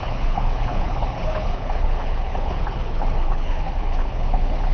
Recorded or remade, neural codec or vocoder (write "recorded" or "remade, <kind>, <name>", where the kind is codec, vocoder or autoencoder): remade, codec, HILCodec